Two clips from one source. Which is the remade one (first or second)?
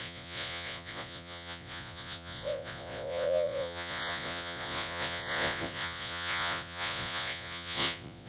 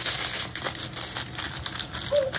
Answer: first